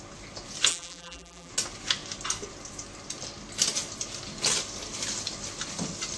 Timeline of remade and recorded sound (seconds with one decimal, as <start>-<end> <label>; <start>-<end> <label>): 0.0-0.7 recorded; 0.7-1.5 remade; 1.5-6.2 recorded